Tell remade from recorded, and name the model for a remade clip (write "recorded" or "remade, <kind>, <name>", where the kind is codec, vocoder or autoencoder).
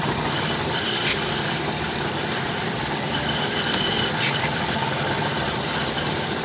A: remade, vocoder, BigVGAN v2